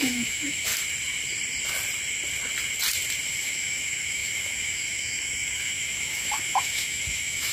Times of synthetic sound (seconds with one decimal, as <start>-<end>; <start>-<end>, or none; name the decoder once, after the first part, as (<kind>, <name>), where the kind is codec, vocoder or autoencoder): 0.0-0.7 (autoencoder, DAC-VAE); 3.3-7.5